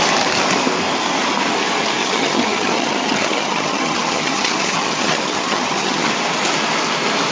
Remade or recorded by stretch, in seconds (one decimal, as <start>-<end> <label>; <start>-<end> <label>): 0.0-2.0 recorded; 2.0-6.1 remade; 6.1-7.3 recorded